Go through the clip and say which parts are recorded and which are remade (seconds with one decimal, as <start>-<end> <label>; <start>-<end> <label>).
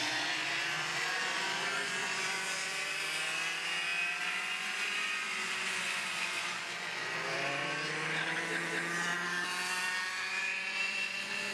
0.0-2.7 remade; 2.7-4.2 recorded; 4.2-7.6 remade; 7.6-10.3 recorded; 10.3-11.5 remade